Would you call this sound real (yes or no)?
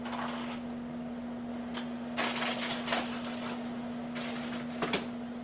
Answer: yes